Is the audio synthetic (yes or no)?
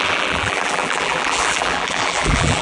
yes